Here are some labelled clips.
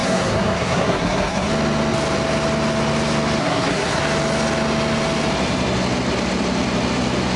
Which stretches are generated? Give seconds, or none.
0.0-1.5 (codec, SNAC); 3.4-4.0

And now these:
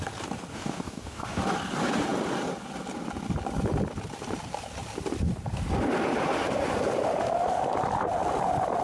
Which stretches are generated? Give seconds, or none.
0.5-1.4 (codec, DAC)

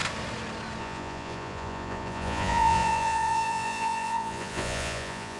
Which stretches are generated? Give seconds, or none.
0.8-5.4 (vocoder, Vocos)